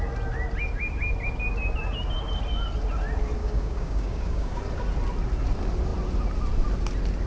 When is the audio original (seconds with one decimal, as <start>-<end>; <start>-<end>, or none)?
0.0-3.4; 4.6-7.3